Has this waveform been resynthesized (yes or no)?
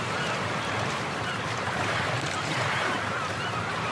yes